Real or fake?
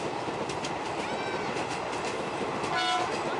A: real